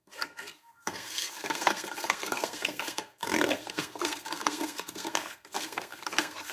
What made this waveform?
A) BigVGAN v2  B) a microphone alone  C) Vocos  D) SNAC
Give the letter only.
D